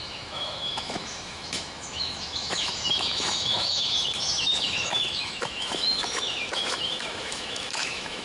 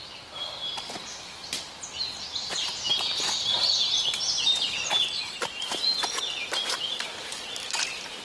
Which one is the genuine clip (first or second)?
second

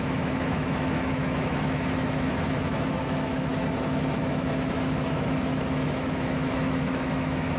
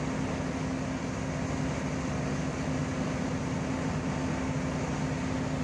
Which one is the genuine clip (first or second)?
second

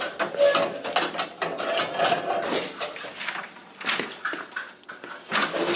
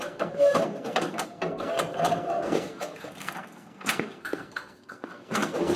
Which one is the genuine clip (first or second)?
first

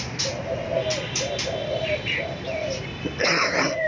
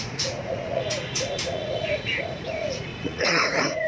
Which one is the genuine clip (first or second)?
first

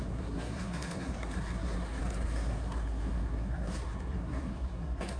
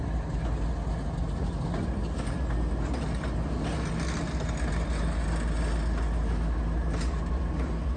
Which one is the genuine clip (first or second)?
second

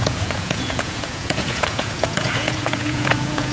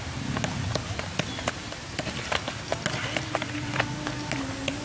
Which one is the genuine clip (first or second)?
second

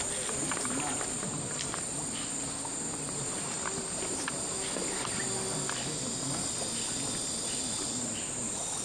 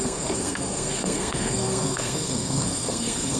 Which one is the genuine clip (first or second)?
first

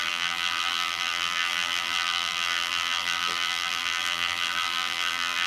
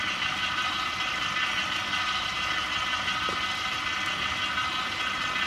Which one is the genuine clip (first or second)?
second